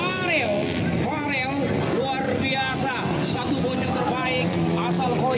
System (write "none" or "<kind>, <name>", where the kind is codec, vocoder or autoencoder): none